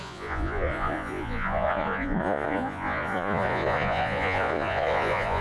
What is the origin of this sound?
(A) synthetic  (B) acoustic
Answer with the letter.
A